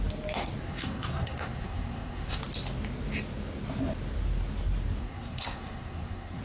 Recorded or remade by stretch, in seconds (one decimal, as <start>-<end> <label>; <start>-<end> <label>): 0.0-0.6 recorded; 0.6-2.4 remade; 2.4-5.0 recorded; 5.0-6.4 remade

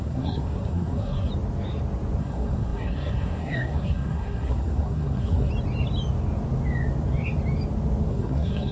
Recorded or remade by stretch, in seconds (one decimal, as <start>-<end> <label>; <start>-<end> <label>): 0.0-1.3 remade; 1.3-2.2 recorded; 2.2-5.5 remade; 5.5-8.1 recorded; 8.1-8.7 remade

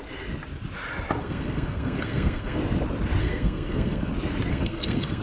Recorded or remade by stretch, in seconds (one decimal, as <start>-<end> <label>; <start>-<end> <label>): 0.0-1.2 recorded; 1.2-2.6 remade; 2.6-3.2 recorded; 3.2-4.1 remade; 4.1-4.5 recorded; 4.5-5.2 remade

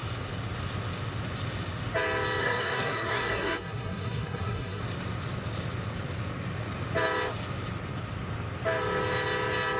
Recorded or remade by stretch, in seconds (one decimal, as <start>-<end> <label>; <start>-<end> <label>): 0.0-2.4 recorded; 2.4-4.8 remade; 4.8-9.8 recorded

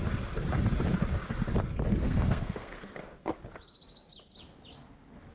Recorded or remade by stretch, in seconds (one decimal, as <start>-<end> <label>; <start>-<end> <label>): 0.0-2.0 recorded; 2.0-3.4 remade; 3.4-5.3 recorded

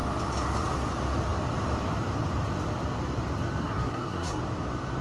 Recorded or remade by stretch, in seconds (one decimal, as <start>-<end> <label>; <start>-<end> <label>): 0.0-3.6 recorded; 3.6-4.4 remade; 4.4-5.0 recorded

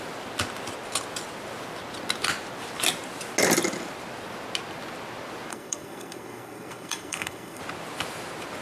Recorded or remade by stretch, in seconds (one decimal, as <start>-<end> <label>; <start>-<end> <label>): 0.0-5.5 recorded; 5.5-7.6 remade; 7.6-8.6 recorded